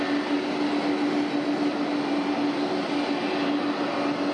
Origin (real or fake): real